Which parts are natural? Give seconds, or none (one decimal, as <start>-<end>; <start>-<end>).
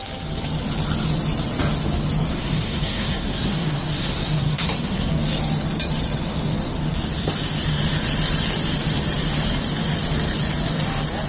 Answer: 0.0-2.3; 5.1-11.3